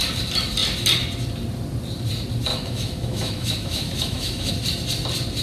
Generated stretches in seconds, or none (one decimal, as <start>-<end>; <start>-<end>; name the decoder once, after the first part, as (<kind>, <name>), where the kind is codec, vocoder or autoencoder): 2.5-4.5 (autoencoder, DAC-VAE)